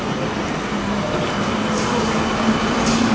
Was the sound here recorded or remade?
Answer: recorded